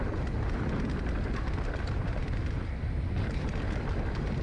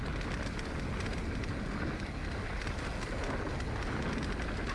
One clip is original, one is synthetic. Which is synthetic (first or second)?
first